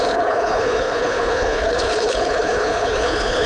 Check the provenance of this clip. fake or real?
fake